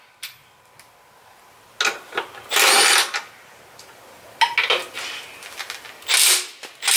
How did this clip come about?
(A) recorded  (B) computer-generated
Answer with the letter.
A